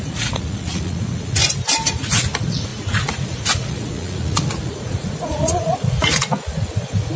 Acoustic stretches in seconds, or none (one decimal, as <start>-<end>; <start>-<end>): 1.4-1.9